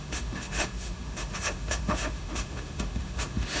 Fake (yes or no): yes